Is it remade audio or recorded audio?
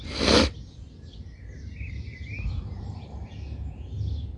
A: recorded